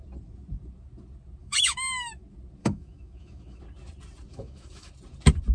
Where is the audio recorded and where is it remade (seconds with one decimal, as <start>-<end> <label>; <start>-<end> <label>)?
0.0-1.4 recorded; 1.4-2.2 remade; 2.2-2.6 recorded; 2.6-3.6 remade; 3.6-4.3 recorded; 4.3-4.9 remade; 4.9-5.5 recorded